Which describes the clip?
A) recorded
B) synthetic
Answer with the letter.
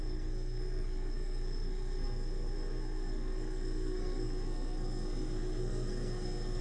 B